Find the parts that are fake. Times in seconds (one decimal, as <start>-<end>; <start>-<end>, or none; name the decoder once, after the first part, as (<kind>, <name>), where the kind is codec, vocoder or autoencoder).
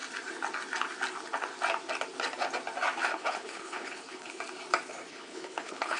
3.1-4.4 (codec, HILCodec); 5.1-6.0